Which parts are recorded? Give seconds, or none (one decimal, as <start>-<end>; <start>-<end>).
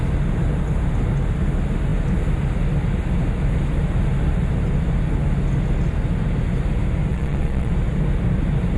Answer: 0.0-7.1; 7.7-8.8